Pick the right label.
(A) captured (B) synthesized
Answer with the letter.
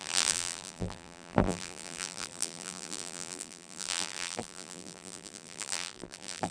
B